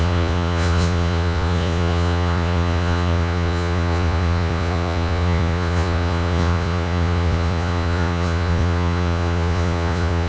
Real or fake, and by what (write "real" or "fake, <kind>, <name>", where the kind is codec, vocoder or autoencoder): fake, vocoder, Vocos